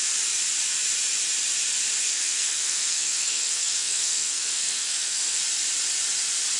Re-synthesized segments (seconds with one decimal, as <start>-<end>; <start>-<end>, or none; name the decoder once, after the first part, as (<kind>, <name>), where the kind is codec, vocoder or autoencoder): 2.0-5.4 (codec, SNAC)